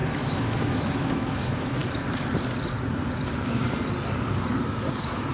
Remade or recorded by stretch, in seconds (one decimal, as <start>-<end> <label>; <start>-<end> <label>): 0.0-1.8 remade; 1.8-5.3 recorded